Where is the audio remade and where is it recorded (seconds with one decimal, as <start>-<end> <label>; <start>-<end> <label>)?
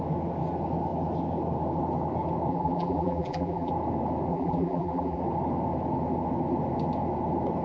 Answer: 0.0-2.5 recorded; 2.5-3.7 remade; 3.7-4.3 recorded; 4.3-5.2 remade; 5.2-7.6 recorded